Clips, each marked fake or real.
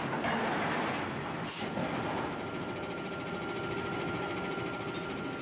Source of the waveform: real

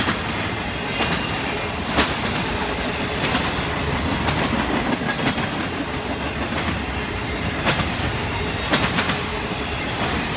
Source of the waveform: real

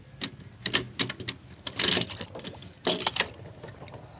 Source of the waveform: real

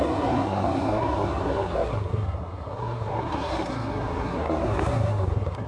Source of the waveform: fake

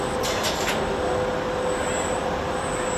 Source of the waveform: real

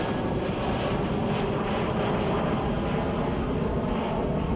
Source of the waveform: real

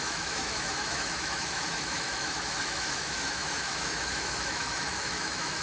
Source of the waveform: fake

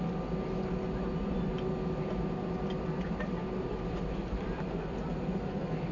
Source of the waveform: real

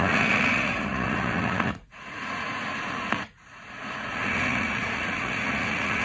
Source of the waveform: fake